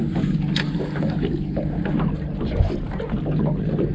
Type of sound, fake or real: real